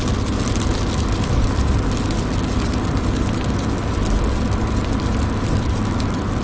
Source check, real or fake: real